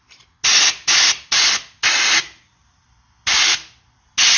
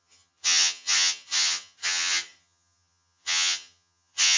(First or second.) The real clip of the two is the first